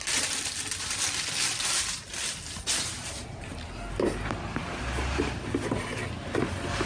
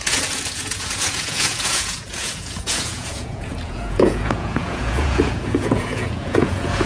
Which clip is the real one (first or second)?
first